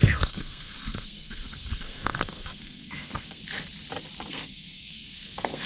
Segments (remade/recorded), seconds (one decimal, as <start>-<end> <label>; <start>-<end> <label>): 0.0-3.4 remade; 3.4-4.3 recorded; 4.3-5.7 remade